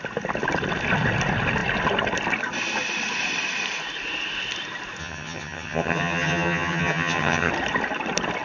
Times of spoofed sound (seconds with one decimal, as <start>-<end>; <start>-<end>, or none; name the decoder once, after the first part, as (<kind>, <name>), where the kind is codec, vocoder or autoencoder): 5.0-7.5 (vocoder, HiFi-GAN)